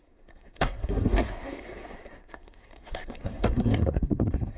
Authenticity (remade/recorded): remade